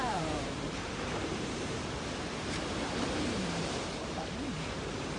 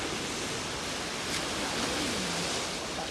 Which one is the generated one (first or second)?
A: first